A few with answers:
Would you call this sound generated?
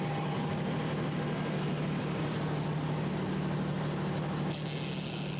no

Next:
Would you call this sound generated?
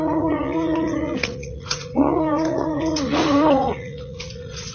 yes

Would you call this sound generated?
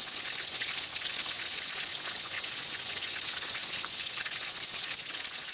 yes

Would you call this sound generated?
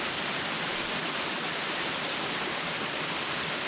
no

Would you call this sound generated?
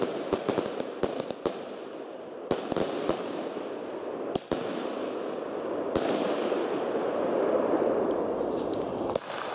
no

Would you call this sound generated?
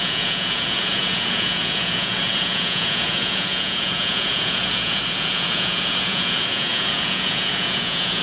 yes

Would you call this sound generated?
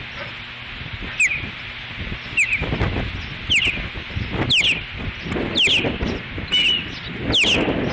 no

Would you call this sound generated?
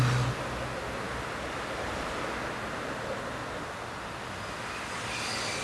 no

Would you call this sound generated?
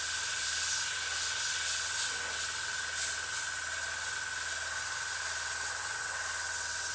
no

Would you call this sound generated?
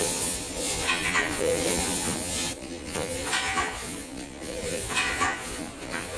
yes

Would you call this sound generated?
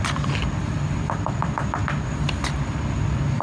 no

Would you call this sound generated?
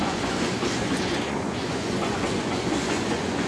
yes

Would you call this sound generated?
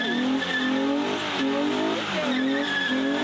no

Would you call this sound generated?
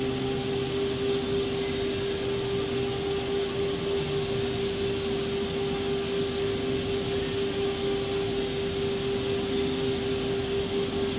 no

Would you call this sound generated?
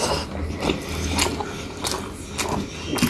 no